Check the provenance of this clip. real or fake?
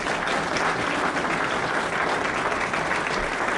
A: real